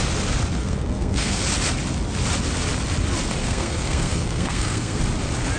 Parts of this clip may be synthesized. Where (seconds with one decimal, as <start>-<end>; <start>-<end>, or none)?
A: 0.6-1.4; 3.4-5.0